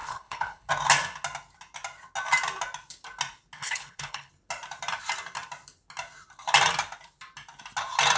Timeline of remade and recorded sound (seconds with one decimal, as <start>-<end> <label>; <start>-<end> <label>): 0.0-0.7 remade; 0.7-3.6 recorded; 3.6-4.3 remade; 4.3-8.2 recorded